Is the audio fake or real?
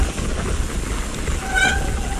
real